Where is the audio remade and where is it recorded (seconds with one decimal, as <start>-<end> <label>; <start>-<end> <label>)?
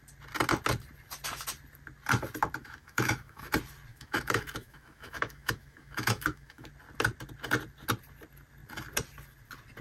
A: 0.0-2.6 recorded; 2.6-3.5 remade; 3.5-3.9 recorded; 3.9-6.7 remade; 6.7-9.8 recorded